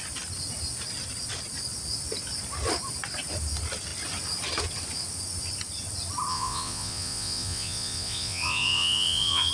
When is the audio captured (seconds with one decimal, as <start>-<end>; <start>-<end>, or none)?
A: 0.0-6.3